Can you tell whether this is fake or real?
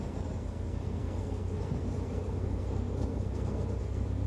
fake